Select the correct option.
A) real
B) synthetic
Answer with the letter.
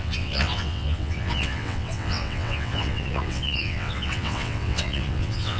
B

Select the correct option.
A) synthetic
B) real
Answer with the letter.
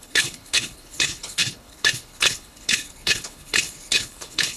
A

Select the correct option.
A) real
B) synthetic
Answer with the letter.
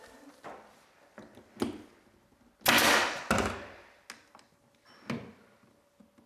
A